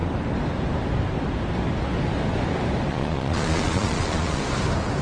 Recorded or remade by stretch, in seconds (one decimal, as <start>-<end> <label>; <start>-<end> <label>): 0.0-2.9 recorded; 2.9-4.4 remade; 4.4-5.0 recorded